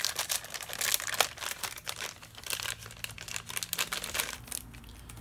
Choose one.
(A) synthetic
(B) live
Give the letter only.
B